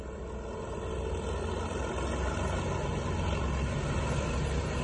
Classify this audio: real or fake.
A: real